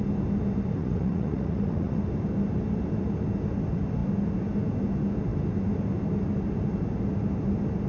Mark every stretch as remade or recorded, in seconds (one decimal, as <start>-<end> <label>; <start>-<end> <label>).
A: 0.0-0.8 recorded; 0.8-2.0 remade; 2.0-7.9 recorded